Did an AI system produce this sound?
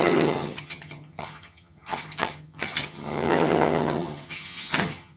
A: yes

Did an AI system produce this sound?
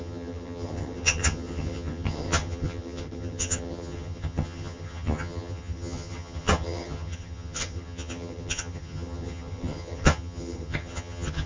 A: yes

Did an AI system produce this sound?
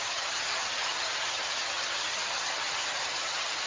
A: yes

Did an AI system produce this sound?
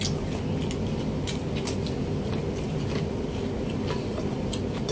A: no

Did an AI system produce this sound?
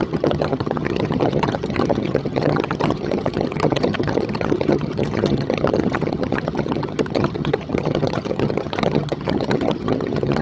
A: yes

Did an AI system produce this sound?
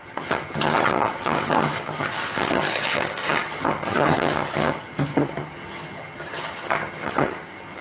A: yes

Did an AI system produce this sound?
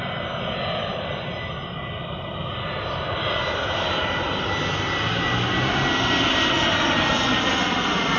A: no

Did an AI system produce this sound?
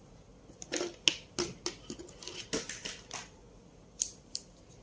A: no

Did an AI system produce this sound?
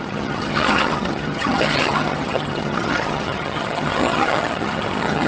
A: yes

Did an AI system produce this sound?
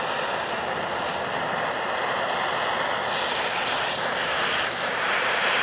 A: no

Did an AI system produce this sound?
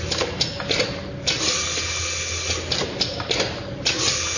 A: no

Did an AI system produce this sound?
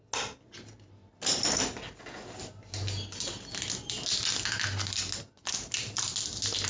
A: no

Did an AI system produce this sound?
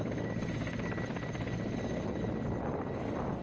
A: no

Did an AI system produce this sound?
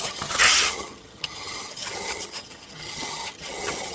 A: yes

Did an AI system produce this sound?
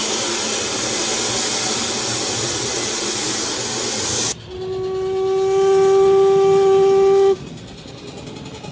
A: no